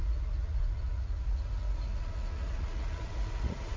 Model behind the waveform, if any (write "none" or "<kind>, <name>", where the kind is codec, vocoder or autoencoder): vocoder, Vocos